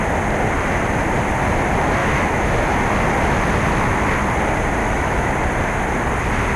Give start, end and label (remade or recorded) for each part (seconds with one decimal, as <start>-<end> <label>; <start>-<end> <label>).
0.0-2.0 recorded; 2.0-2.6 remade; 2.6-4.8 recorded; 4.8-5.3 remade; 5.3-6.6 recorded